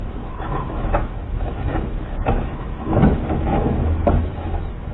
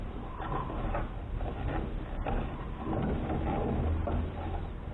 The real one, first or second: second